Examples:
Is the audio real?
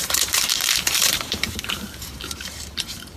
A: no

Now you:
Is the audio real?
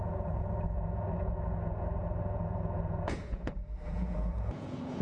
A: no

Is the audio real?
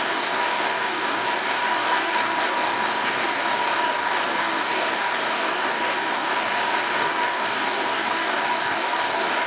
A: no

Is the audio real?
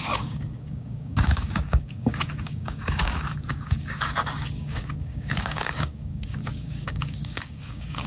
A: no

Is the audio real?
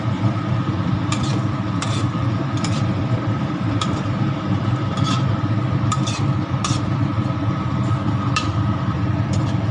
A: no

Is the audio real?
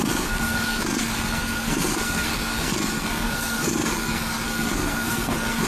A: no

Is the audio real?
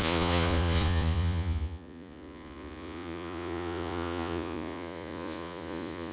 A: no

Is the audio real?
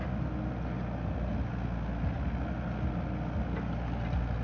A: yes